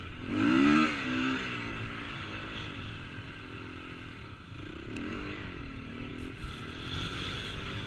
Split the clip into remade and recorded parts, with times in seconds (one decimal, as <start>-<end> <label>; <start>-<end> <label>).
0.0-2.4 remade; 2.4-5.1 recorded; 5.1-6.1 remade; 6.1-7.1 recorded; 7.1-7.9 remade

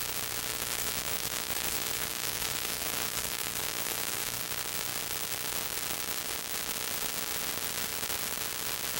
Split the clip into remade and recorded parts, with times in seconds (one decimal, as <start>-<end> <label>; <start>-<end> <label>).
0.0-0.5 recorded; 0.5-4.4 remade; 4.4-9.0 recorded

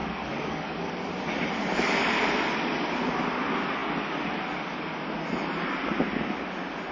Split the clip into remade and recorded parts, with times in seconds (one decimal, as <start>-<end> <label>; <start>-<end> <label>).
0.0-0.9 remade; 0.9-6.9 recorded

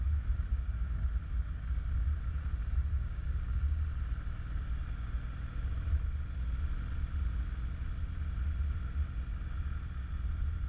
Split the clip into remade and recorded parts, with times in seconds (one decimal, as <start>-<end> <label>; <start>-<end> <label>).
0.0-0.5 recorded; 0.5-1.0 remade; 1.0-2.9 recorded; 2.9-3.6 remade; 3.6-10.7 recorded

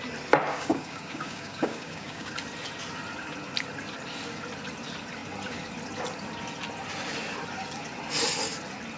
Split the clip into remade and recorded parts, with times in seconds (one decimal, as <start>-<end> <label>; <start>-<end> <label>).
0.0-0.5 recorded; 0.5-2.3 remade; 2.3-9.0 recorded

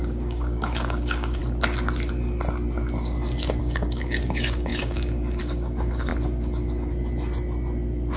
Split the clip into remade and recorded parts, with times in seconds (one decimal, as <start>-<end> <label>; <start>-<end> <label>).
0.0-1.4 remade; 1.4-3.6 recorded; 3.6-6.1 remade; 6.1-8.2 recorded